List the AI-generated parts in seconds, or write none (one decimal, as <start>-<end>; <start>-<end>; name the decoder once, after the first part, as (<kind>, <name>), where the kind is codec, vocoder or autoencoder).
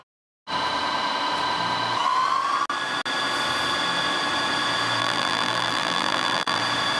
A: 5.0-6.6 (vocoder, BigVGAN v2)